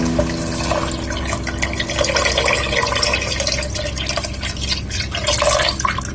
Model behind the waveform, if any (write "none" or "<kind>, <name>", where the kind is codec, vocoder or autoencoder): none